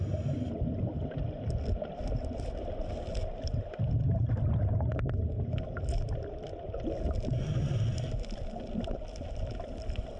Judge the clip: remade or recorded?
recorded